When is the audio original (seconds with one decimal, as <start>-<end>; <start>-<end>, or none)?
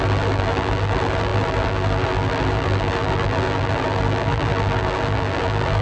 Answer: none